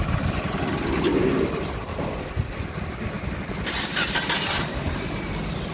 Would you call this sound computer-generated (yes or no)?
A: no